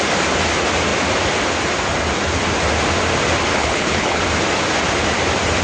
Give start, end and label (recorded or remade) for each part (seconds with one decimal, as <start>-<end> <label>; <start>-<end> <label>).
0.0-3.5 recorded; 3.5-4.2 remade; 4.2-5.6 recorded